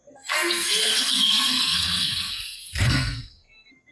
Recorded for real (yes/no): no